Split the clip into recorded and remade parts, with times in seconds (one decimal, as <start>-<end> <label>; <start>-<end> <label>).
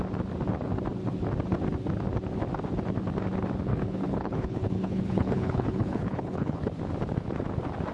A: 0.0-3.7 recorded; 3.7-6.6 remade; 6.6-7.9 recorded